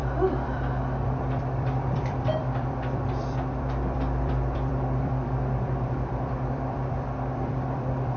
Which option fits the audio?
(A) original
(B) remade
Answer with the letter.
B